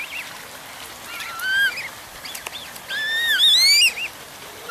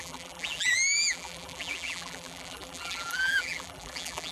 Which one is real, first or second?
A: first